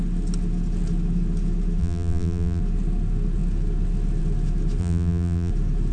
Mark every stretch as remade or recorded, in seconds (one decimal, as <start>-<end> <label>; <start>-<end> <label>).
0.0-1.8 recorded; 1.8-2.6 remade; 2.6-4.8 recorded; 4.8-5.5 remade; 5.5-5.9 recorded